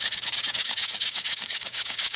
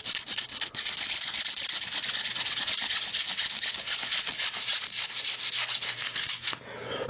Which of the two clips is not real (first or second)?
first